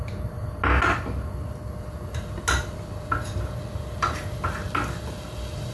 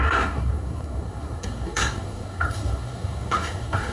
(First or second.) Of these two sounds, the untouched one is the first